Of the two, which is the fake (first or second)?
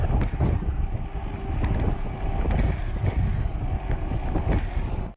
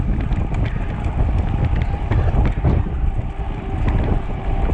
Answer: second